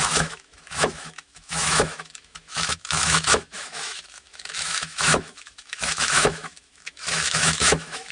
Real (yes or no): no